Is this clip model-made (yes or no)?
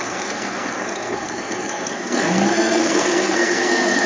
yes